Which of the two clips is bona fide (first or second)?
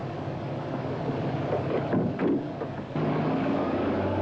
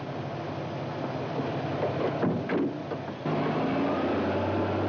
second